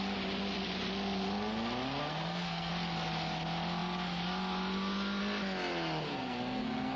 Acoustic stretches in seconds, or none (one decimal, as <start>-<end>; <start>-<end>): 0.0-2.0; 2.7-6.1